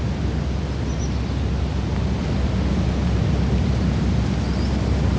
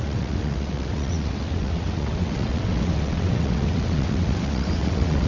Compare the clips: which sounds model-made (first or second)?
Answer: second